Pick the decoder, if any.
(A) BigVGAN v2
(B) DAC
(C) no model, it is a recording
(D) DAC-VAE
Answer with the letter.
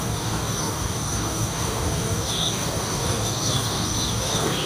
B